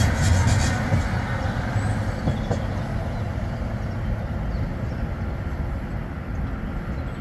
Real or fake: real